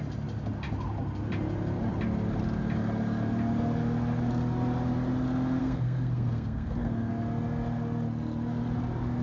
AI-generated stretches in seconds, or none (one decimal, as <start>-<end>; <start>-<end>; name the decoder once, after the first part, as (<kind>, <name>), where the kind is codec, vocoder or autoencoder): 5.6-7.1 (codec, SNAC)